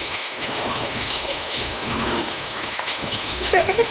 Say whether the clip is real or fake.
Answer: fake